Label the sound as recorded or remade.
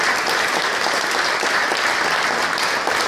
recorded